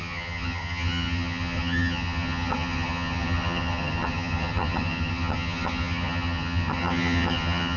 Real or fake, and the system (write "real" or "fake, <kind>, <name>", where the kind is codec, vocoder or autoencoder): fake, vocoder, HiFi-GAN